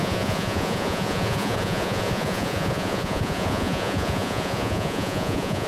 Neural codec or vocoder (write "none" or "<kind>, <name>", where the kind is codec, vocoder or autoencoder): vocoder, Vocos